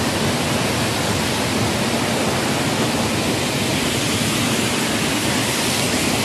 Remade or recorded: recorded